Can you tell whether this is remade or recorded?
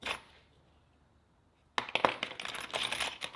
recorded